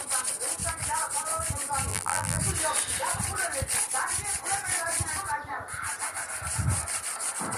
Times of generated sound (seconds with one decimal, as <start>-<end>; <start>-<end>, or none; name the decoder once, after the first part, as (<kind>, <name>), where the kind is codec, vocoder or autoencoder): 1.9-2.4 (vocoder, BigVGAN v2)